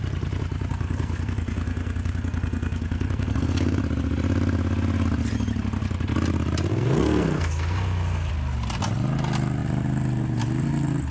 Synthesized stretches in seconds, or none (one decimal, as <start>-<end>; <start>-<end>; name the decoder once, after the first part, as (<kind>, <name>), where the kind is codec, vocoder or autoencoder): 0.7-3.8 (codec, SNAC); 6.7-8.3

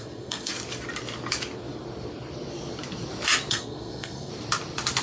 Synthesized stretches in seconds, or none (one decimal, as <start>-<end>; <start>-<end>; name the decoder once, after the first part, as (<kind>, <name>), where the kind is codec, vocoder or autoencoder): 0.0-0.5 (codec, SNAC); 3.5-4.3

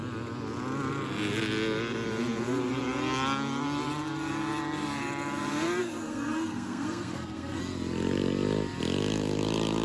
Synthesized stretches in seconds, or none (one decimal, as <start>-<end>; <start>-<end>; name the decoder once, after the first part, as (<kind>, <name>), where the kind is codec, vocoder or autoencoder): 5.8-7.6 (codec, SNAC)

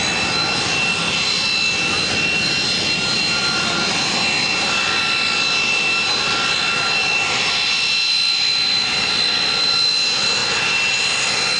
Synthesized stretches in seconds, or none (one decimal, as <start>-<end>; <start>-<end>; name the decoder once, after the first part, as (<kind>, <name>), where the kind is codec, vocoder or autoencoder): none

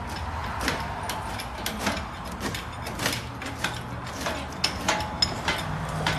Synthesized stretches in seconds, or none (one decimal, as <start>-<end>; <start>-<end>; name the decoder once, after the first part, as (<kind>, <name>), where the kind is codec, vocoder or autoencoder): none

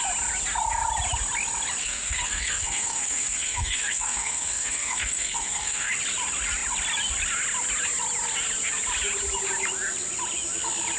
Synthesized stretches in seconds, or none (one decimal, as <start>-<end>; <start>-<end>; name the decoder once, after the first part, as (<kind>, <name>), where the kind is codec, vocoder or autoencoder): 1.8-5.9 (codec, SNAC)

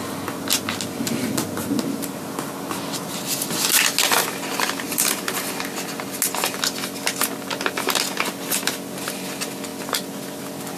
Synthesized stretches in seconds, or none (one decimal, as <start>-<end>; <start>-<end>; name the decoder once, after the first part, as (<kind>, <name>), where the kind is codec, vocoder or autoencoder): none

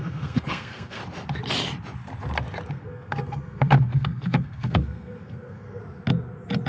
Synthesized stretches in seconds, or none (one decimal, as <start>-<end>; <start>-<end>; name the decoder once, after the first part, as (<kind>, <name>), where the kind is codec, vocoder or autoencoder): 0.0-1.0 (codec, SNAC); 2.7-5.8